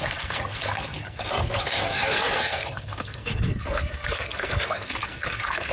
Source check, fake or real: fake